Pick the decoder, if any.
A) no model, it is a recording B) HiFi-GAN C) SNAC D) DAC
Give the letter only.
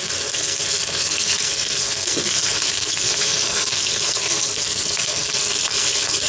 C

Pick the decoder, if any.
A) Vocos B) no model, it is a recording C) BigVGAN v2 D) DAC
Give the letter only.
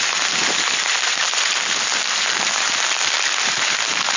B